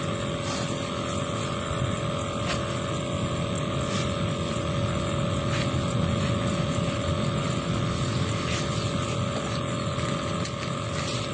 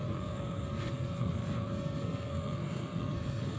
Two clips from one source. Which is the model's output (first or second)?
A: second